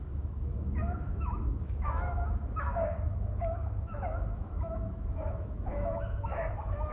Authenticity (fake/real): fake